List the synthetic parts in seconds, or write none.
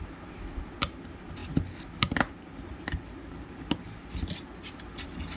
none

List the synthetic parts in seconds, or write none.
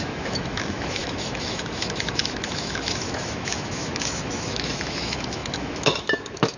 0.0-6.6 (autoencoder, DAC-VAE)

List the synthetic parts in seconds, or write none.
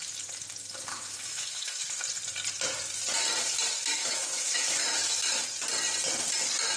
0.9-2.0 (autoencoder, DAC-VAE); 4.0-5.4